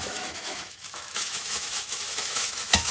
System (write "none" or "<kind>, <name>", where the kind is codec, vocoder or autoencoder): autoencoder, DAC-VAE